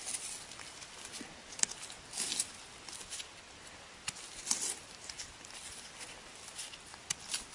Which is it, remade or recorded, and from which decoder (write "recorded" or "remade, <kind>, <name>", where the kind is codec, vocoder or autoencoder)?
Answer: recorded